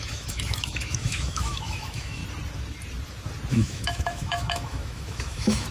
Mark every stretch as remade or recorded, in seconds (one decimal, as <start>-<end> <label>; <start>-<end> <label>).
0.0-2.2 remade; 2.2-3.5 recorded; 3.5-5.7 remade